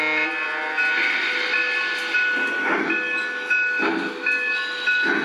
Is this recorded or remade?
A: recorded